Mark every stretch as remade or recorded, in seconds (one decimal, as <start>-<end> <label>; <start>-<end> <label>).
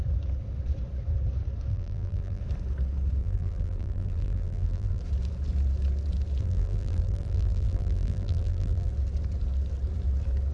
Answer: 0.0-1.7 recorded; 1.7-2.4 remade; 2.4-3.2 recorded; 3.2-5.0 remade; 5.0-6.4 recorded; 6.4-8.9 remade; 8.9-10.5 recorded